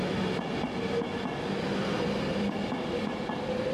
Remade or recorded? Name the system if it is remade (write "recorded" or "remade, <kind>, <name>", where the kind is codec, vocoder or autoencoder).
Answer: recorded